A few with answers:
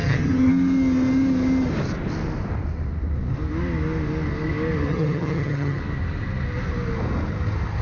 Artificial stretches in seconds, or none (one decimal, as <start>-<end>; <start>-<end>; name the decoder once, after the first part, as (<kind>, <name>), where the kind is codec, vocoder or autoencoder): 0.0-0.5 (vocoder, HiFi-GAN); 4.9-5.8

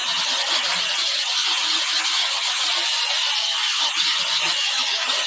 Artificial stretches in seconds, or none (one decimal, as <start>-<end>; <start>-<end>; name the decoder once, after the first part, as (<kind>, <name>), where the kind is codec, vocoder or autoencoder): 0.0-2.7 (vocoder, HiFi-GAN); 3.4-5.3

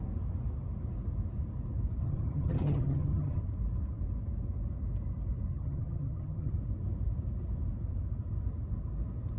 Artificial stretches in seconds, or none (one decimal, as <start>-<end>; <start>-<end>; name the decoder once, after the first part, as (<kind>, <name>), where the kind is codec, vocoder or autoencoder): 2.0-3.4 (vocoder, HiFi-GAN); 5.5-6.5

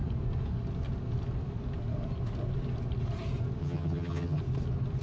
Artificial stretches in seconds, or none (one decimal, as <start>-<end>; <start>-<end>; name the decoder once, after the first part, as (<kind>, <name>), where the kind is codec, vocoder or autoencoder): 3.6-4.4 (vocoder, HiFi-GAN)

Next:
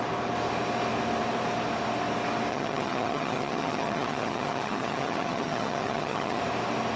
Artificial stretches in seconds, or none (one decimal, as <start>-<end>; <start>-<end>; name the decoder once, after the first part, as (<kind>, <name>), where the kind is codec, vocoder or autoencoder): 2.5-6.4 (vocoder, HiFi-GAN)

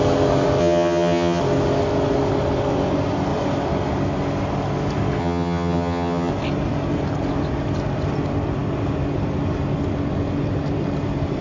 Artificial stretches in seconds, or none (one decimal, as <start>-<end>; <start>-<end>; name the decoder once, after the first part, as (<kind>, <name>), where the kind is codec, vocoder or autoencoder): 0.6-1.4 (vocoder, HiFi-GAN); 5.2-6.3

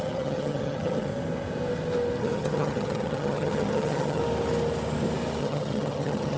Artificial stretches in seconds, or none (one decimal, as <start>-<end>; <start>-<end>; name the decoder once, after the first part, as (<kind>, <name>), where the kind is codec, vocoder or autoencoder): 0.0-1.1 (vocoder, HiFi-GAN); 2.2-4.2; 5.4-6.4